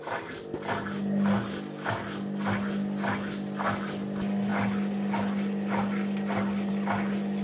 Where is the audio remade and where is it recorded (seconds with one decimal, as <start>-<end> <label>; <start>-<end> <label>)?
0.0-7.4 recorded